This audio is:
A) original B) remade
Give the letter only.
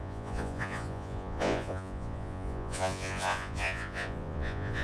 B